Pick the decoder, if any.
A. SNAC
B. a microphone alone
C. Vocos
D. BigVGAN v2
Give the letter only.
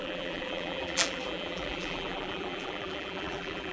D